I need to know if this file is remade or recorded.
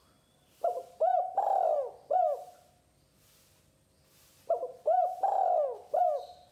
recorded